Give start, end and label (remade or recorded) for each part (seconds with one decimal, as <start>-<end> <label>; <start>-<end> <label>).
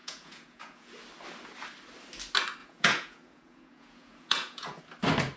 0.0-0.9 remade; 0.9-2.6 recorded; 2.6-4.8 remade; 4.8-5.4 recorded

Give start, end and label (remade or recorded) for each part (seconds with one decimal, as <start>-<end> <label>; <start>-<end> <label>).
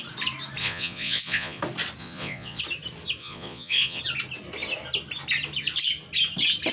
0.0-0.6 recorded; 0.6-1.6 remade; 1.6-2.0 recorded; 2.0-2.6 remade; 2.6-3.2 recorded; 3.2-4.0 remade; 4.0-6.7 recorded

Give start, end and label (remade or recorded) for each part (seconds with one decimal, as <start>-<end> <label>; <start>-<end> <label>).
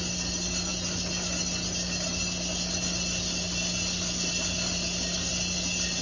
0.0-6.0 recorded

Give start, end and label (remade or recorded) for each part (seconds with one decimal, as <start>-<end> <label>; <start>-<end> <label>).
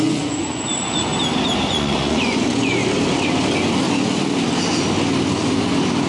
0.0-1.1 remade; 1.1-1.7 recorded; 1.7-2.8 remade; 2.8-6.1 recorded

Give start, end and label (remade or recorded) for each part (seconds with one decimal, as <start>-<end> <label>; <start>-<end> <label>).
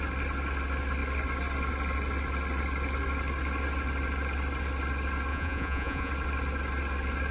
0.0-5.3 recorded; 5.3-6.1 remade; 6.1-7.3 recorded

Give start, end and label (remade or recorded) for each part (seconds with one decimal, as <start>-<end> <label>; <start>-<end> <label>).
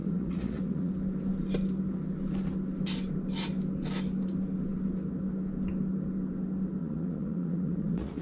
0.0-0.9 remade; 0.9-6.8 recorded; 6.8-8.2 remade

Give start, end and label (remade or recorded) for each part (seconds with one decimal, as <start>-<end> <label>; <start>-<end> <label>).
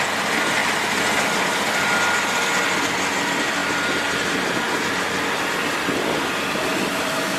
0.0-7.4 recorded